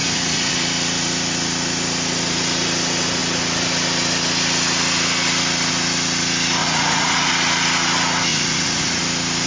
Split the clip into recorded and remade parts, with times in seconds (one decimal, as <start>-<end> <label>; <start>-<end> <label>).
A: 0.0-0.5 remade; 0.5-6.6 recorded; 6.6-7.3 remade; 7.3-8.3 recorded; 8.3-9.0 remade; 9.0-9.5 recorded